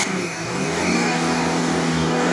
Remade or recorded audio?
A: remade